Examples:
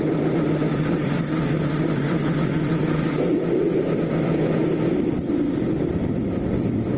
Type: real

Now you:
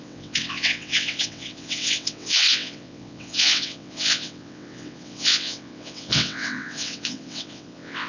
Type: fake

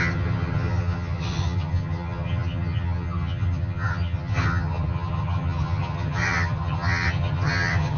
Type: fake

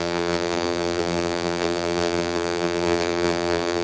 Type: fake